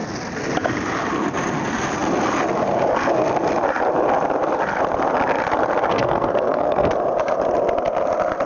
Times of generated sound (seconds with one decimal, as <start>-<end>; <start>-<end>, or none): 5.9-6.9